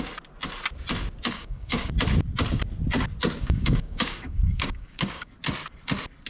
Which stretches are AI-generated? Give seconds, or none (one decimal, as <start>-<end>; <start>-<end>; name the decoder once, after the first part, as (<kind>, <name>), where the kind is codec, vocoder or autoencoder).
1.4-1.9 (codec, DAC); 3.4-5.3